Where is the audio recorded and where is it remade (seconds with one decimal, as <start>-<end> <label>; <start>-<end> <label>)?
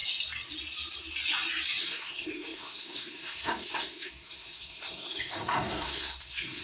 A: 0.0-1.8 recorded; 1.8-6.6 remade